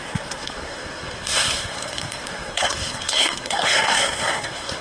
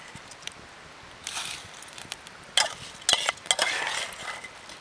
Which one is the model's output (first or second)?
first